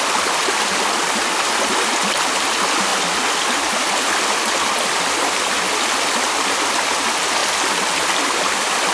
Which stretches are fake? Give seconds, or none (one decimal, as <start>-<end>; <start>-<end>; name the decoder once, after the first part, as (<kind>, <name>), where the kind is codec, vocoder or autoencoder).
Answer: none